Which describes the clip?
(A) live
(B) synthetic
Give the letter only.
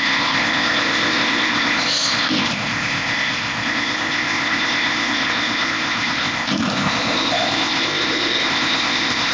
B